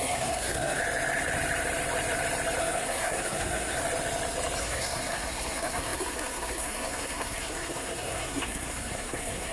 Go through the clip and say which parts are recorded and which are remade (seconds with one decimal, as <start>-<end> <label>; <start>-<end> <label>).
0.0-0.8 remade; 0.8-2.6 recorded; 2.6-3.8 remade; 3.8-4.6 recorded; 4.6-9.5 remade